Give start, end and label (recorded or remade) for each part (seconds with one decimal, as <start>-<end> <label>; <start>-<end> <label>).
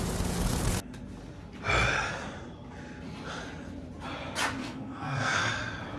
0.0-4.6 recorded; 4.6-5.4 remade; 5.4-6.0 recorded